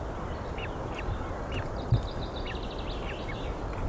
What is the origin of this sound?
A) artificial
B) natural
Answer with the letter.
B